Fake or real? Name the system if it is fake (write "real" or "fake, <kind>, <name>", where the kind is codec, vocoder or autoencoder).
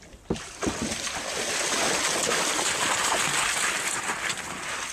real